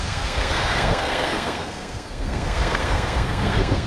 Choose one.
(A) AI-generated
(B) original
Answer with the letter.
A